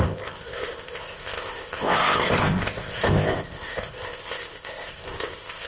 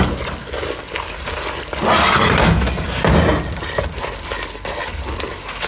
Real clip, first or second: second